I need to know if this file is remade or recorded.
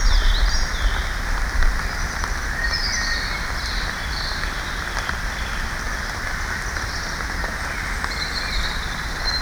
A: recorded